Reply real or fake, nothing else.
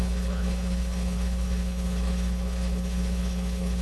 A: fake